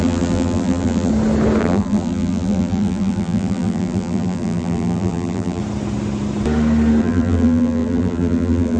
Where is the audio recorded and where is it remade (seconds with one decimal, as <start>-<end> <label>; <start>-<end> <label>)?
0.0-1.1 remade; 1.1-1.6 recorded; 1.6-5.6 remade; 5.6-7.0 recorded; 7.0-8.8 remade